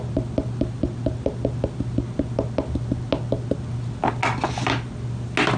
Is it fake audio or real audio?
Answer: real